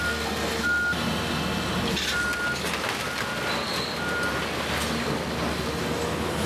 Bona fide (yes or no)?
yes